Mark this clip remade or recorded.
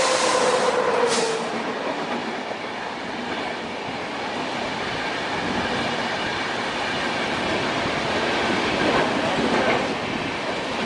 recorded